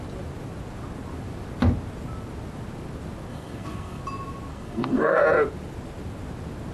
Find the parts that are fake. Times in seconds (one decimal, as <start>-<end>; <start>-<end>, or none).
3.3-4.0; 4.5-5.2